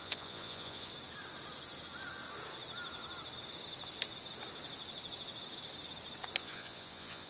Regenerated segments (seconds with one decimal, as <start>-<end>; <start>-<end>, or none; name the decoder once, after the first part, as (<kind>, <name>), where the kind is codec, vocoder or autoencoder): 0.0-0.9 (vocoder, Vocos); 6.4-7.3

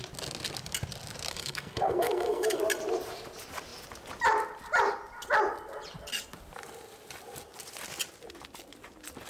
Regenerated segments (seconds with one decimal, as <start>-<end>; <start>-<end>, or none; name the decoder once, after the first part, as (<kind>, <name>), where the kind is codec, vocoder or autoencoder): 1.3-2.6 (codec, SNAC)

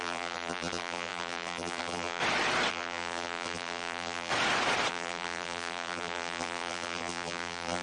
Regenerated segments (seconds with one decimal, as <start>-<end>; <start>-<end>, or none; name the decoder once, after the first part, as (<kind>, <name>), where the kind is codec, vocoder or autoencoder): 0.0-2.2 (vocoder, BigVGAN v2); 2.7-4.3; 4.9-7.8